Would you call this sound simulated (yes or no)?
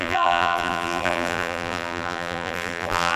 yes